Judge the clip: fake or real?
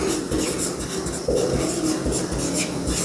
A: real